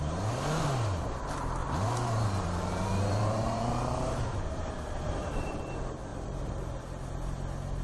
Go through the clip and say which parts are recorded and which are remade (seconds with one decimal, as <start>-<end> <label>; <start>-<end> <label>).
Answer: 0.0-1.6 recorded; 1.6-5.6 remade; 5.6-6.1 recorded; 6.1-6.8 remade; 6.8-7.8 recorded

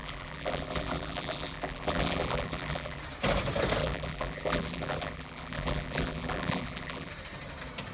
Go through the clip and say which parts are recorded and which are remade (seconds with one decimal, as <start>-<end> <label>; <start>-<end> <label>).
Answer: 0.0-3.0 remade; 3.0-3.8 recorded; 3.8-7.1 remade; 7.1-7.9 recorded

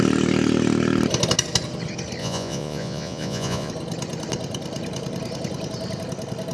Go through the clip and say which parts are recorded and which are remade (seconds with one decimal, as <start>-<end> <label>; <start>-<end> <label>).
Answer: 0.0-2.2 recorded; 2.2-3.7 remade; 3.7-6.5 recorded